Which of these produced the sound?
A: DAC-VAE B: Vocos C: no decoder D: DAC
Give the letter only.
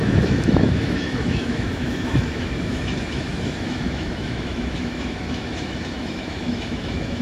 A